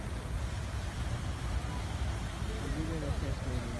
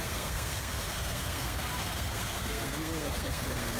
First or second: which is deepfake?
second